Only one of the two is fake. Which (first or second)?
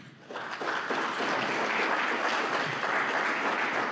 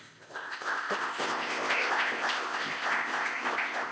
second